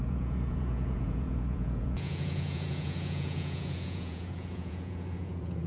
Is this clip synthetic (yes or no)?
yes